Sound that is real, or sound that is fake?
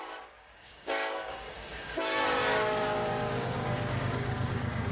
fake